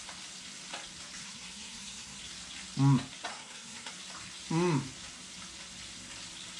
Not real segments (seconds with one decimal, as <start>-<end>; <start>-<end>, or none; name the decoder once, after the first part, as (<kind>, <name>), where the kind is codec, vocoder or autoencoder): 1.2-2.2 (codec, SNAC); 3.3-3.9